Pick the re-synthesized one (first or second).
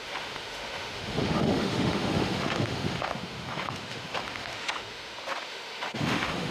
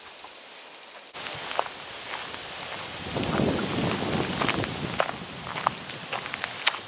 first